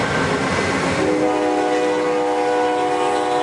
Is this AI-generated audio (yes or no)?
no